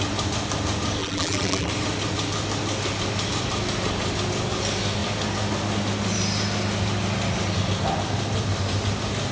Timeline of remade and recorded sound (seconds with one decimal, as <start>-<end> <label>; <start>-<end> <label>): 0.0-1.0 recorded; 1.0-1.7 remade; 1.7-9.3 recorded